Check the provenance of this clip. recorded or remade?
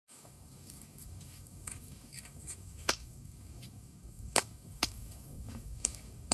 remade